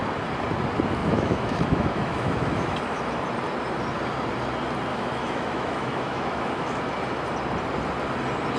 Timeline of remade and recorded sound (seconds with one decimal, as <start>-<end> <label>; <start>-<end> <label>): 0.0-1.0 recorded; 1.0-3.0 remade; 3.0-4.9 recorded; 4.9-6.9 remade; 6.9-8.6 recorded